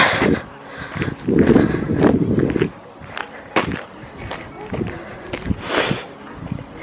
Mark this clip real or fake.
real